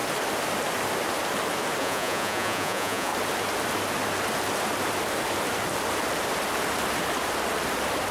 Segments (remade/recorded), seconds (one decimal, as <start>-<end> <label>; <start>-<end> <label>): 0.0-1.8 recorded; 1.8-3.1 remade; 3.1-8.1 recorded